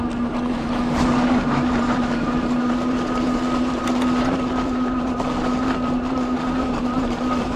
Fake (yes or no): yes